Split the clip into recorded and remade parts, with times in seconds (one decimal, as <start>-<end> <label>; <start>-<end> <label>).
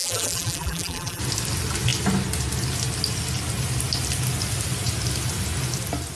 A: 0.0-1.2 remade; 1.2-6.2 recorded